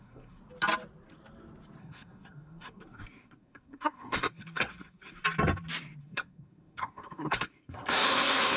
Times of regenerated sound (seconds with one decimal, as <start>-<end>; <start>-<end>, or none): 0.0-0.4; 1.8-5.2; 6.0-8.6